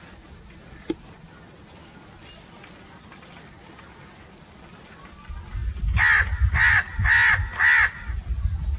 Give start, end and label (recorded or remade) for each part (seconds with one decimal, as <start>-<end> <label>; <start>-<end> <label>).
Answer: 0.0-8.8 recorded